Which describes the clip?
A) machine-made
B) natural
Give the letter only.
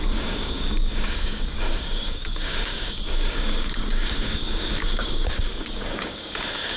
A